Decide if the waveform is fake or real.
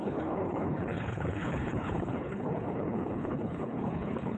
fake